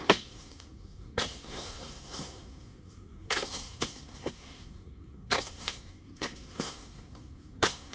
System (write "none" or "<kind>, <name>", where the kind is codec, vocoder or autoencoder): codec, SNAC